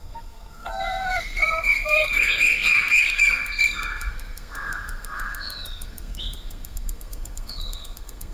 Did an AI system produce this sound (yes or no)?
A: yes